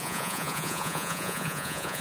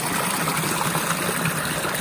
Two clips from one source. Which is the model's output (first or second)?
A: first